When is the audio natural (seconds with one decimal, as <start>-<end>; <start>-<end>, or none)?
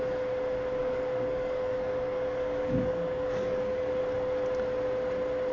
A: 0.0-0.8; 4.0-5.5